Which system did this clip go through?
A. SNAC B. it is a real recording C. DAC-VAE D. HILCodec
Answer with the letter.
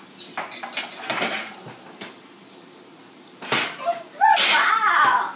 B